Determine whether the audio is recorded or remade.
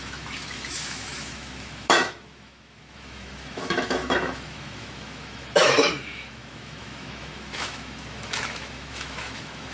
remade